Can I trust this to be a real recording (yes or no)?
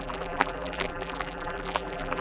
no